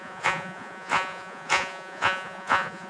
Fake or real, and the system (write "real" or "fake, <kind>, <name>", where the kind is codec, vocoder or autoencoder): fake, vocoder, Vocos